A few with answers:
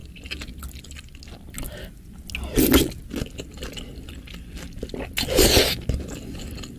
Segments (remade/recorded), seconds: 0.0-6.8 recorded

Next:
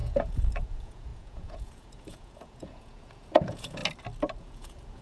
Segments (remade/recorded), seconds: 0.0-3.8 remade; 3.8-4.4 recorded; 4.4-5.0 remade

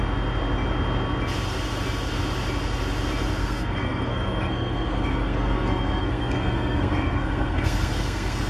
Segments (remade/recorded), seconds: 0.0-3.4 recorded; 3.4-8.5 remade

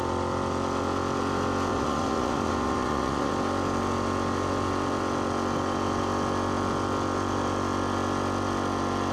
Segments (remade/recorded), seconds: 0.0-1.7 recorded; 1.7-3.3 remade; 3.3-9.1 recorded

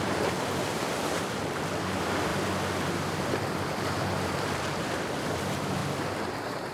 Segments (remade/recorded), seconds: 0.0-5.8 remade; 5.8-6.3 recorded; 6.3-6.7 remade

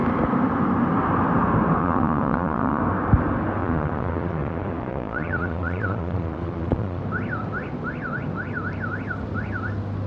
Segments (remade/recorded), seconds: 0.0-1.8 recorded; 1.8-2.8 remade; 2.8-3.6 recorded; 3.6-7.0 remade; 7.0-10.1 recorded